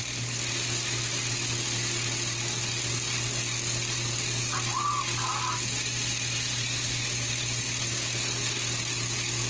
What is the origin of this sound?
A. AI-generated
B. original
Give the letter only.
B